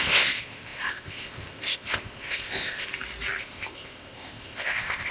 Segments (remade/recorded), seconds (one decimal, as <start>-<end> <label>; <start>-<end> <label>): 0.0-2.9 remade; 2.9-3.4 recorded; 3.4-5.1 remade